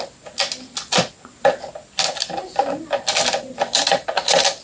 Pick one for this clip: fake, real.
real